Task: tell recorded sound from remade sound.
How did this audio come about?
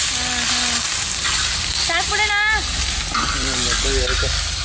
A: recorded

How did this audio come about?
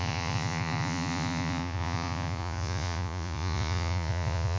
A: remade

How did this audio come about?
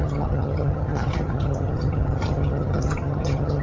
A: remade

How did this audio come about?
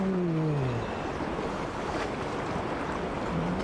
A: recorded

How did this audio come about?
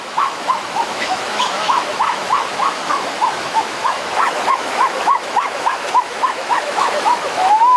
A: remade